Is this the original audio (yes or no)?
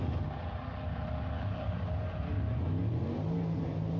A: yes